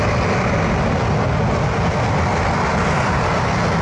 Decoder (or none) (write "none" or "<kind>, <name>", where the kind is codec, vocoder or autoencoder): none